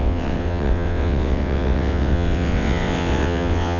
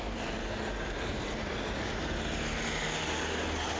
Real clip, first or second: second